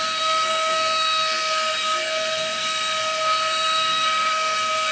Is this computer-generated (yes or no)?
yes